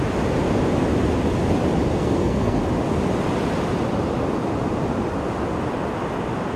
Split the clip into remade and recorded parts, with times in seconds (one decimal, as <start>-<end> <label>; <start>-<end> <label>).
0.0-2.0 recorded; 2.0-2.6 remade; 2.6-6.6 recorded